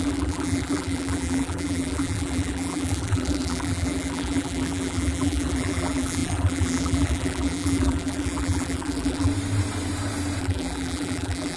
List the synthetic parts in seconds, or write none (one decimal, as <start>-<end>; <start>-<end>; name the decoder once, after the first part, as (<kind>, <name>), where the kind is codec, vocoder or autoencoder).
0.0-9.3 (vocoder, BigVGAN v2); 10.4-11.6